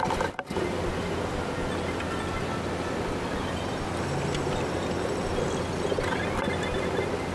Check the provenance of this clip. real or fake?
real